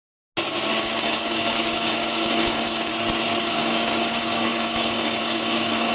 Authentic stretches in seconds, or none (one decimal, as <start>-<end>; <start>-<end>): 0.0-0.8; 2.9-3.4